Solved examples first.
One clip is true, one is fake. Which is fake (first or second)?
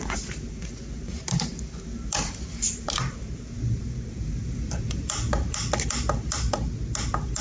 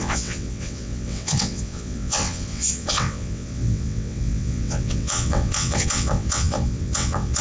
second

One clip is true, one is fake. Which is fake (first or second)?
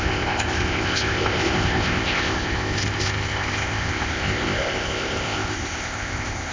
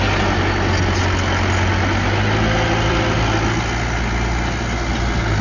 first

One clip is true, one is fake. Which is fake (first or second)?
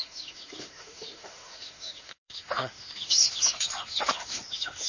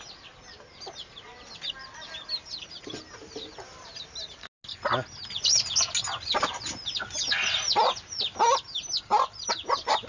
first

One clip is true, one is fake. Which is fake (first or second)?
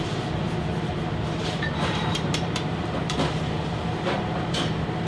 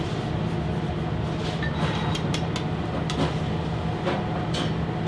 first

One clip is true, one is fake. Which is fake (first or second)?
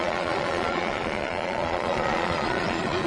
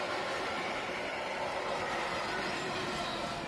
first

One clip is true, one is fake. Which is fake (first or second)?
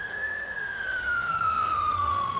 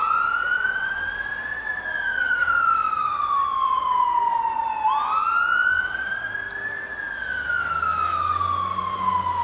first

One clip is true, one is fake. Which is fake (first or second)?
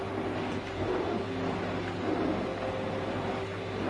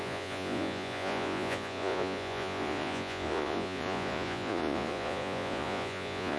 second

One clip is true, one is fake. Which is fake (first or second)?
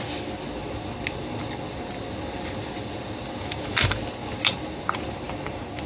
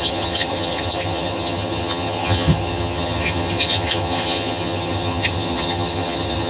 second